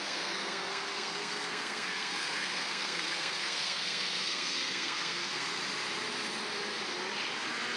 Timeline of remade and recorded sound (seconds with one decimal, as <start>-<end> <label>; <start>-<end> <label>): 0.0-5.6 remade; 5.6-7.8 recorded